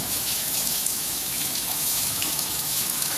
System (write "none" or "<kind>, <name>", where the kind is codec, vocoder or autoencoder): autoencoder, DAC-VAE